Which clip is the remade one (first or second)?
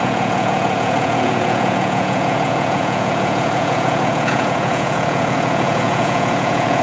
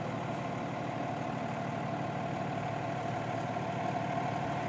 first